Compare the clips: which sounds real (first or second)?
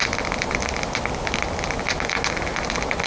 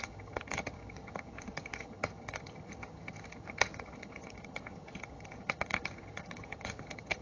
first